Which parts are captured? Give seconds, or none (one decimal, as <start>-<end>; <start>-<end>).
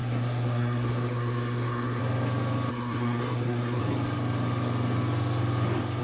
2.0-2.7; 3.8-6.0